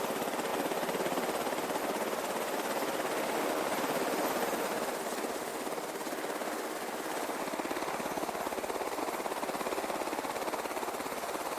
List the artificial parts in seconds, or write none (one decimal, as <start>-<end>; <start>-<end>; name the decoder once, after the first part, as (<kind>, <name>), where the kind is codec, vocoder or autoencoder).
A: none